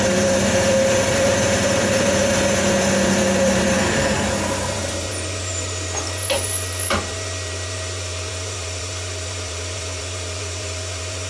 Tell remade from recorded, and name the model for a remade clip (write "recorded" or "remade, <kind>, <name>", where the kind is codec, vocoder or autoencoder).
remade, vocoder, BigVGAN v2